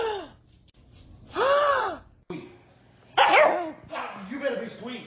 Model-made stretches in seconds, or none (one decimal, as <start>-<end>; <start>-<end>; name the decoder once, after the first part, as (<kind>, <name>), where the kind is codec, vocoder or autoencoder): none